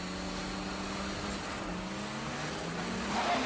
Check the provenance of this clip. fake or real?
real